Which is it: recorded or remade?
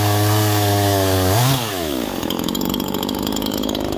remade